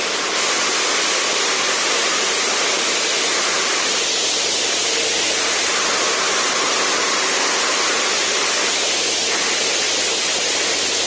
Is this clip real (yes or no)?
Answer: yes